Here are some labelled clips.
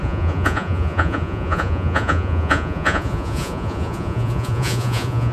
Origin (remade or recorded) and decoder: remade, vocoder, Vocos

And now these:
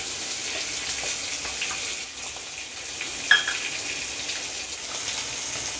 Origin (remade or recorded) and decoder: recorded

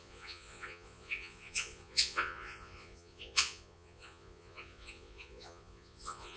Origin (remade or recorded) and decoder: remade, vocoder, Vocos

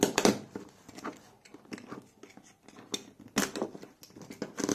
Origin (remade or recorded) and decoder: recorded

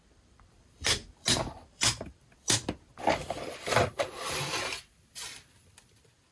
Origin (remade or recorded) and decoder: remade, vocoder, BigVGAN v2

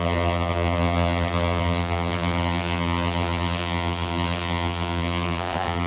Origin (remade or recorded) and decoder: remade, vocoder, BigVGAN v2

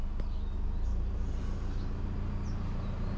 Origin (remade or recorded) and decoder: recorded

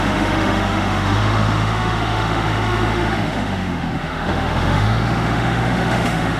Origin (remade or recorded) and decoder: remade, autoencoder, DAC-VAE